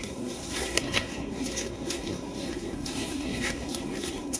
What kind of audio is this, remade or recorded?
remade